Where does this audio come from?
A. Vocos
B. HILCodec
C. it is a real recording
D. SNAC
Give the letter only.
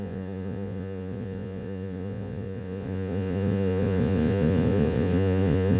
A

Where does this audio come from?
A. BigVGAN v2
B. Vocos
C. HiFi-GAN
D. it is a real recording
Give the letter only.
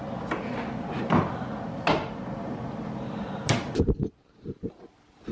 D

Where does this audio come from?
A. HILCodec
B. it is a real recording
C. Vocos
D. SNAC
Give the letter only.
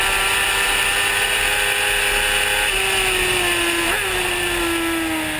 B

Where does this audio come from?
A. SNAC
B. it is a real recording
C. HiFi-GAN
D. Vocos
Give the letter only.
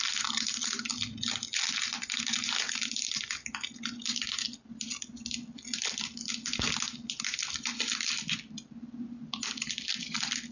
B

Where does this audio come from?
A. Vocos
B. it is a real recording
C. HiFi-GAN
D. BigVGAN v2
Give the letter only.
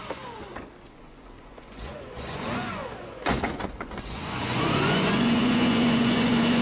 A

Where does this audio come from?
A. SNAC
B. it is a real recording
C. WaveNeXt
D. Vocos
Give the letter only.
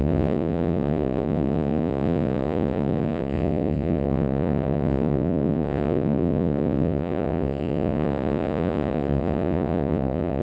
D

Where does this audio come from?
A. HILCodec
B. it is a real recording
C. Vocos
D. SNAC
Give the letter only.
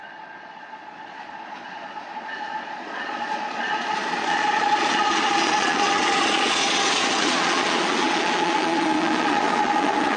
C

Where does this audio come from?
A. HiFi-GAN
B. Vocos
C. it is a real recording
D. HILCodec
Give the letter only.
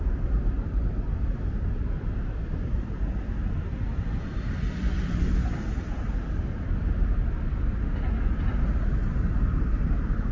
C